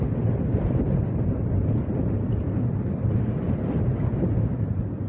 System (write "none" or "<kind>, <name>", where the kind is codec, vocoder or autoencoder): none